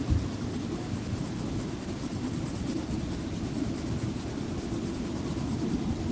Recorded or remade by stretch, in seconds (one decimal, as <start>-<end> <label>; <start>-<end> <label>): 0.0-0.8 recorded; 0.8-1.8 remade; 1.8-3.4 recorded; 3.4-4.1 remade; 4.1-6.1 recorded